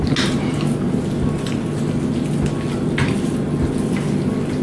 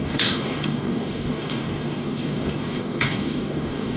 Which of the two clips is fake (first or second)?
second